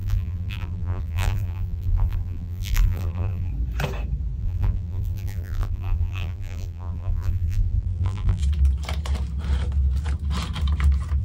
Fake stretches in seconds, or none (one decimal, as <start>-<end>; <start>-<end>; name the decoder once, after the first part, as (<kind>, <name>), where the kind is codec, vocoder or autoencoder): 0.0-3.5 (vocoder, BigVGAN v2); 4.4-8.4